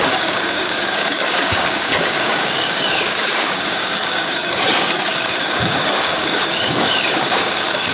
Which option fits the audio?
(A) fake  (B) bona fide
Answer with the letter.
A